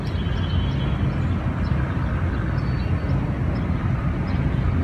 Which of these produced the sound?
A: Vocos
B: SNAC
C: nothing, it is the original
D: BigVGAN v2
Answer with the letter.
C